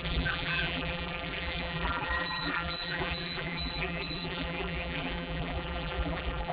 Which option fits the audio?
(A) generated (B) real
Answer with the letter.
A